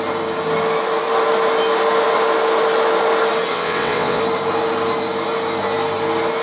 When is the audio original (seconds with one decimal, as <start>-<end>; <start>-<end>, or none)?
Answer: 0.0-3.5; 4.2-6.4